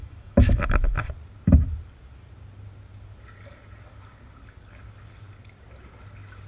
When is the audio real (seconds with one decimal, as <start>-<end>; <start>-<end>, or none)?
0.9-6.5